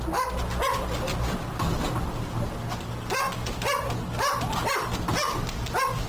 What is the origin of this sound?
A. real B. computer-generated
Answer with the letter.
A